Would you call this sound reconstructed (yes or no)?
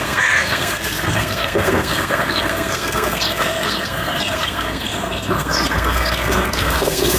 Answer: yes